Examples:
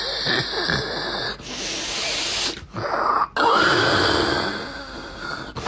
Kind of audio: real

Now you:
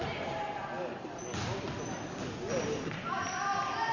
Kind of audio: real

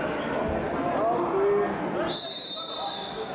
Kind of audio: real